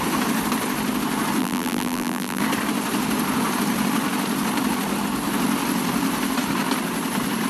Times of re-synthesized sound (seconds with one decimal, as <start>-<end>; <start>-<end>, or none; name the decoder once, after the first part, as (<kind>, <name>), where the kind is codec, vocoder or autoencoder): 1.4-2.4 (vocoder, BigVGAN v2)